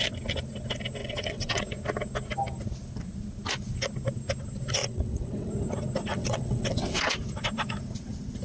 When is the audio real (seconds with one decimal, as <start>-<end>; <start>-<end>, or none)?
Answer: 0.0-1.0; 1.6-4.8; 5.5-6.1; 7.1-8.4